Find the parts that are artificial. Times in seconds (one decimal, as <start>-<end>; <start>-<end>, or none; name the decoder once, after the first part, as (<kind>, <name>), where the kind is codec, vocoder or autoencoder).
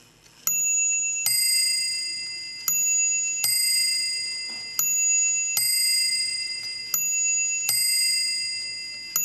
6.1-6.8 (vocoder, Vocos)